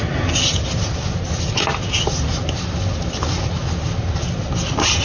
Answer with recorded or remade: recorded